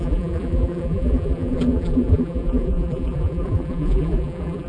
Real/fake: fake